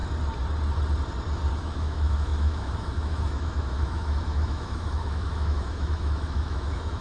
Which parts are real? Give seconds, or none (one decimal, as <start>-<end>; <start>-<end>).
0.0-1.5